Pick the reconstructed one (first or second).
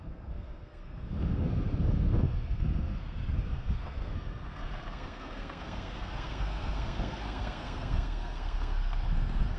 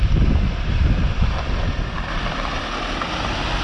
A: first